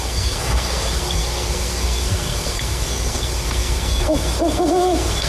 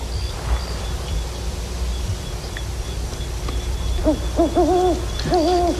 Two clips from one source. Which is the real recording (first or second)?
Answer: second